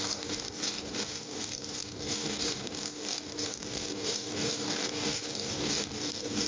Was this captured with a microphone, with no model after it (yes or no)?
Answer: no